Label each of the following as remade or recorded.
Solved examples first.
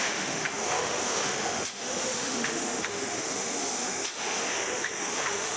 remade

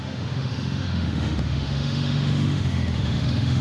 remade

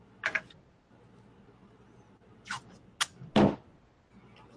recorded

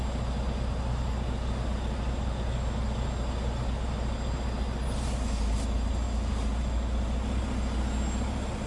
recorded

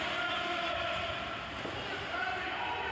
recorded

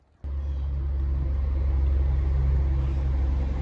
recorded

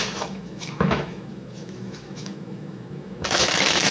remade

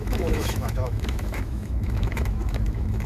remade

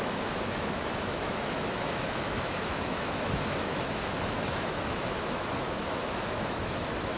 remade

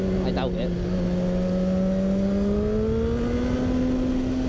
recorded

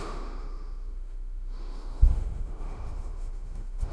remade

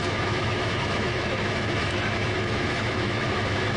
remade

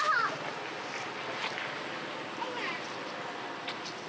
recorded